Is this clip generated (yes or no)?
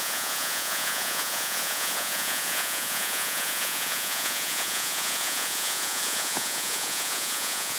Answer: yes